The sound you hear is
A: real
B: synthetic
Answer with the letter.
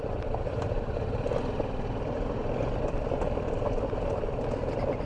B